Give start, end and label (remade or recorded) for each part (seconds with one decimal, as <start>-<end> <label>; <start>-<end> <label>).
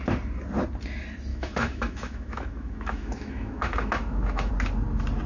0.0-1.3 recorded; 1.3-4.5 remade; 4.5-5.3 recorded